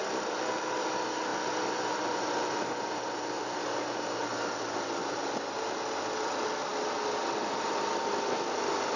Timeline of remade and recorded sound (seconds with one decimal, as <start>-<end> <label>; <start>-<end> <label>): 0.0-9.0 recorded